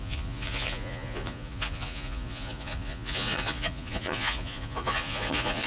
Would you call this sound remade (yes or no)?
yes